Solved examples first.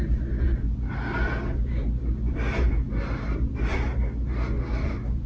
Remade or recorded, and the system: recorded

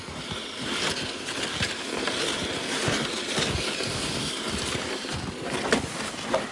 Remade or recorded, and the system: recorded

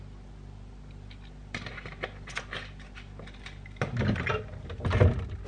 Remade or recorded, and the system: recorded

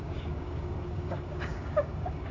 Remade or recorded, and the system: remade, codec, DAC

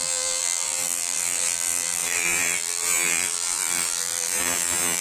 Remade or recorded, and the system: remade, vocoder, BigVGAN v2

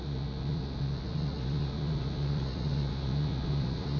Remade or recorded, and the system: remade, vocoder, Vocos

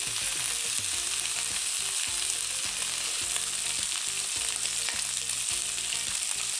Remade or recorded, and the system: recorded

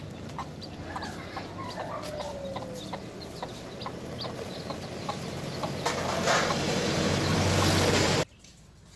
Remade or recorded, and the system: recorded